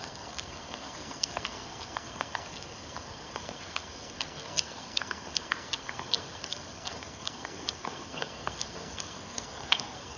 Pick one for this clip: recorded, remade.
remade